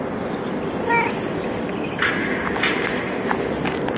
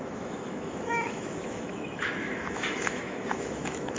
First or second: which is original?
first